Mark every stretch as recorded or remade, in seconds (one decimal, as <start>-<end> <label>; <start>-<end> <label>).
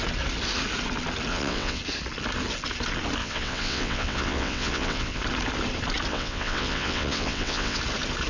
0.0-1.3 recorded; 1.3-1.8 remade; 1.8-3.2 recorded; 3.2-5.2 remade; 5.2-6.1 recorded; 6.1-7.8 remade; 7.8-8.3 recorded